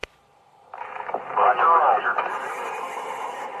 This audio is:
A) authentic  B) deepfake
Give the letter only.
B